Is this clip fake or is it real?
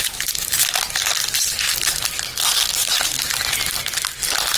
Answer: real